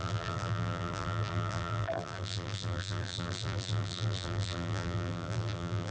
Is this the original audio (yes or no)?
no